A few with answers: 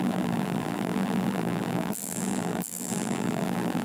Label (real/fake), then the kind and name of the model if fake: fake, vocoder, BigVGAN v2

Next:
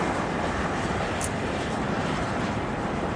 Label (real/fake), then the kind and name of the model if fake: fake, vocoder, BigVGAN v2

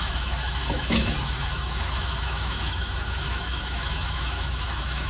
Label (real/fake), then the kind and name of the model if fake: fake, autoencoder, DAC-VAE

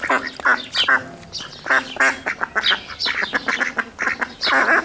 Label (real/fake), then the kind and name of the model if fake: real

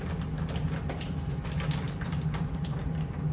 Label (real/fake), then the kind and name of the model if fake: real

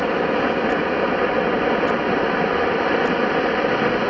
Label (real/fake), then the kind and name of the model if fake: real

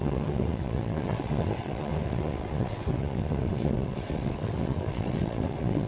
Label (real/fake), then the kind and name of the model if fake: fake, vocoder, WaveNeXt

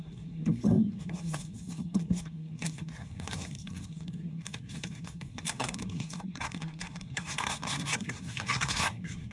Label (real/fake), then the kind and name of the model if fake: fake, codec, SNAC